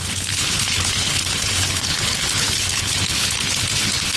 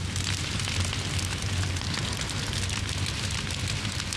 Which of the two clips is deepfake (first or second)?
first